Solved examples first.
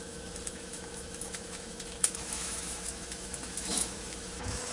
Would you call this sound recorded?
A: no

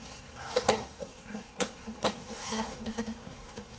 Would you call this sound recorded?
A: no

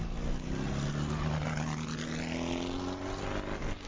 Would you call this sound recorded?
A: yes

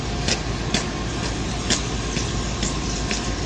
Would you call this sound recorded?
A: yes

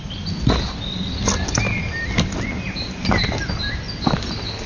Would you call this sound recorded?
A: yes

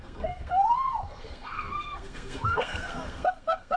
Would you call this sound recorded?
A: no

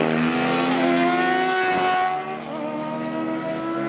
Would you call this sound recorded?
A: yes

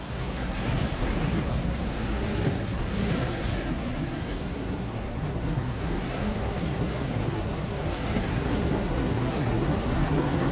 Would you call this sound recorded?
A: no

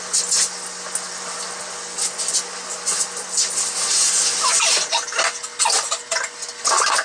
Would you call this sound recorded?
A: yes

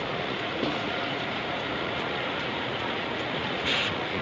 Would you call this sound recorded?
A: no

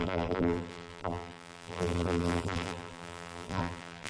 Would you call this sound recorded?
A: no